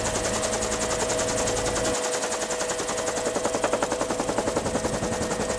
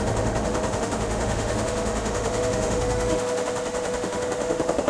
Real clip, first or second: first